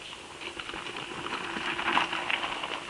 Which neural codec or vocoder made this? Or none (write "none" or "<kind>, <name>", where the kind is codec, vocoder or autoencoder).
none